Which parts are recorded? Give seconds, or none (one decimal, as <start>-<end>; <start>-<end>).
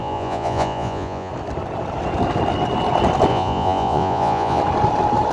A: 1.3-3.3; 4.6-5.3